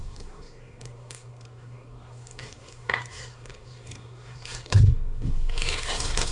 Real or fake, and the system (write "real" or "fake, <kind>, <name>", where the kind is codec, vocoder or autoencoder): fake, codec, SNAC